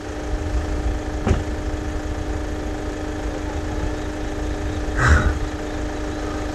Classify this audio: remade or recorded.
recorded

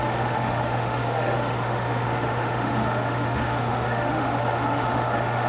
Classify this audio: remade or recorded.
remade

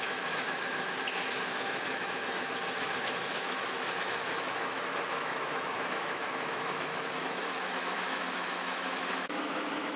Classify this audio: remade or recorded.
remade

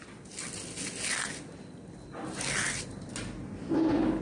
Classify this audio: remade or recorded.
recorded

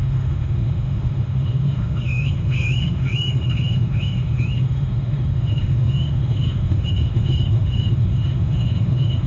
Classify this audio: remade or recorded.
remade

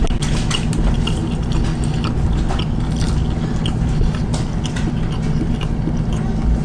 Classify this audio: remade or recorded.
recorded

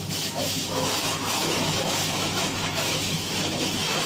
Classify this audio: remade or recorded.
remade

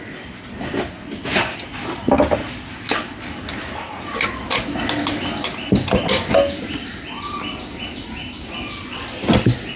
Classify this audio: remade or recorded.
recorded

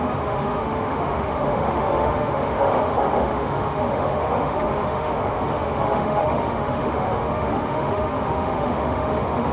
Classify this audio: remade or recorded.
remade